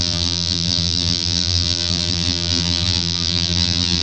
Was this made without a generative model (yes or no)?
no